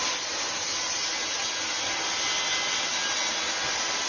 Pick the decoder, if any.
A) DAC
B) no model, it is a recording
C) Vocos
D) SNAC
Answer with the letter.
B